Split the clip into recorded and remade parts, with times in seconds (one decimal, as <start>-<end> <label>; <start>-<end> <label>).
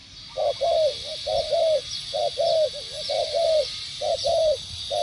0.0-5.0 recorded